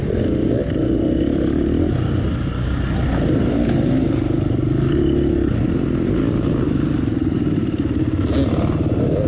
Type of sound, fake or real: real